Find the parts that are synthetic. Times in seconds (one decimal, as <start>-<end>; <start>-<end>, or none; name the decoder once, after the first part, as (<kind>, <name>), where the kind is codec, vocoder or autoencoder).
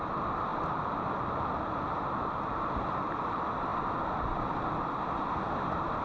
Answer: none